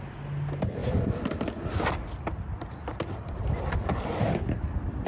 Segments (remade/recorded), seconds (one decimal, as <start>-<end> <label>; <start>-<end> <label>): 0.0-5.1 recorded